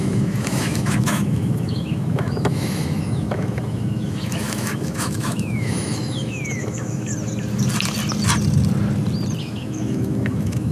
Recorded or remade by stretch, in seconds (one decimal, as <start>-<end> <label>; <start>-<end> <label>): 0.0-7.1 remade; 7.1-9.4 recorded; 9.4-10.7 remade